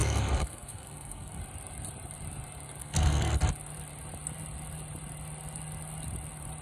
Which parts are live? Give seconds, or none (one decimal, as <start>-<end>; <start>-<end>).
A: 1.4-2.8; 3.4-6.6